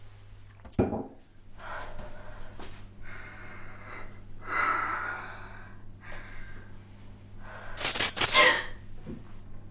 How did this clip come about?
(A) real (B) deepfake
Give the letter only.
A